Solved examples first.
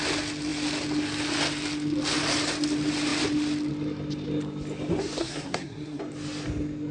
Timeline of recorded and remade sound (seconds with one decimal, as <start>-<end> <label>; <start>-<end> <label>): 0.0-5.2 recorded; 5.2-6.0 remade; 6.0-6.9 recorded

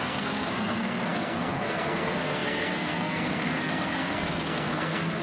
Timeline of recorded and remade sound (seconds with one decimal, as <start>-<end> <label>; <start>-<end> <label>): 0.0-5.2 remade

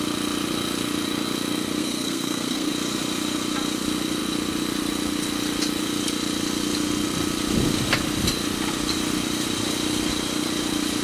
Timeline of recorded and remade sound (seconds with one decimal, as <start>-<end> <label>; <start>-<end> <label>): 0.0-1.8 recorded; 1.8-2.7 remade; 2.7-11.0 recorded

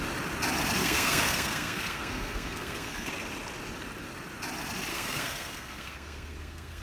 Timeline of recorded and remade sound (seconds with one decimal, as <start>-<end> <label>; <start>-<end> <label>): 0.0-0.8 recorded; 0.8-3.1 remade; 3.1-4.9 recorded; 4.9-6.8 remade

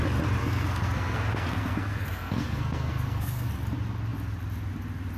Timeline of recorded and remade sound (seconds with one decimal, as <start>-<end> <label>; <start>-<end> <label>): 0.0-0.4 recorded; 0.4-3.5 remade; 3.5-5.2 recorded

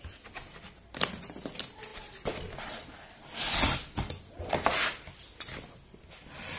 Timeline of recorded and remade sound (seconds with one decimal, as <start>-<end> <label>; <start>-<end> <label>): 0.0-6.6 recorded

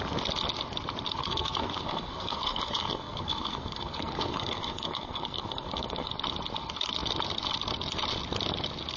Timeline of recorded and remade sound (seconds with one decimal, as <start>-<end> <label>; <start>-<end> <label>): 0.0-1.2 recorded; 1.2-6.1 remade; 6.1-9.0 recorded